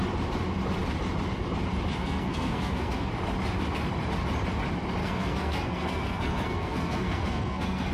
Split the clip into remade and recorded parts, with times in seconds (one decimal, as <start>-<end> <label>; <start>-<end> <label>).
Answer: 0.0-2.0 recorded; 2.0-3.1 remade; 3.1-5.0 recorded; 5.0-7.9 remade